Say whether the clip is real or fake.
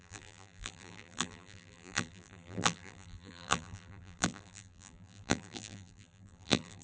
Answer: fake